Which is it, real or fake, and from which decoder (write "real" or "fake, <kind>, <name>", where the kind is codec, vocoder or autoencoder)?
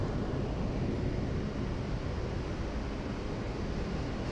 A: real